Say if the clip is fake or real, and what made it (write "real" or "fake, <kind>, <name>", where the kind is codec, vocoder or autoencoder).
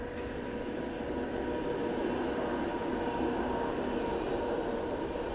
real